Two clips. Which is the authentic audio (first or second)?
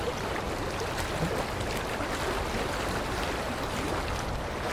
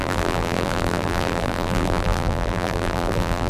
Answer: first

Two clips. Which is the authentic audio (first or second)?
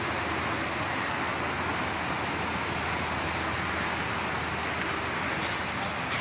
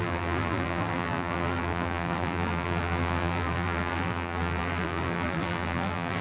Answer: first